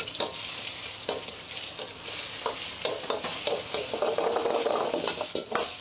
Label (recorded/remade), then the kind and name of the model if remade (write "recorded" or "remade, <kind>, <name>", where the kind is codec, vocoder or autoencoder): recorded